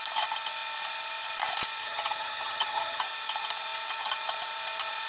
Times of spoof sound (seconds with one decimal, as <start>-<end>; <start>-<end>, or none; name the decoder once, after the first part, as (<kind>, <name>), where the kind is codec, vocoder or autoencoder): 1.8-3.0 (vocoder, HiFi-GAN)